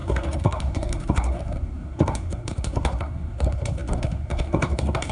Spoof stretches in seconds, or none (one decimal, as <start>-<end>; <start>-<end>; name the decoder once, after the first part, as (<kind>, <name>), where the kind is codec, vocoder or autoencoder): 0.0-5.1 (codec, SNAC)